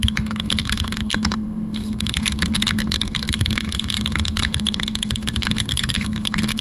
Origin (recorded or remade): remade